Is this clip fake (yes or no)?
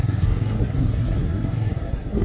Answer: yes